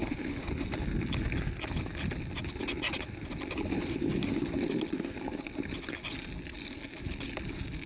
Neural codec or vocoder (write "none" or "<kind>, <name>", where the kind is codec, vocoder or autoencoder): none